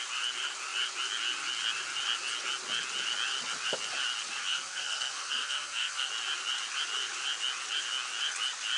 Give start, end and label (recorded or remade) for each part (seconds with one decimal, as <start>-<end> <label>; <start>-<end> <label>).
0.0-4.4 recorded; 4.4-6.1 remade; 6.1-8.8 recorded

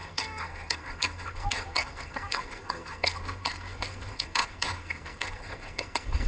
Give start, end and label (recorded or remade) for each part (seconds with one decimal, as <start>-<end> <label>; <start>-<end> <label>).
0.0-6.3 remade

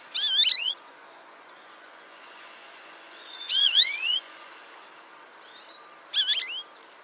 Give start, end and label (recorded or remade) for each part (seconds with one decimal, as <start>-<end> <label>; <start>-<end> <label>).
0.0-0.6 recorded; 0.6-4.5 remade; 4.5-7.0 recorded

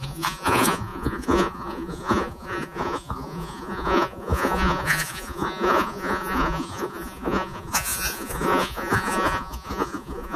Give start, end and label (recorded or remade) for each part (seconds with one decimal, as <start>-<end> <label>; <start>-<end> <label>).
0.0-10.4 remade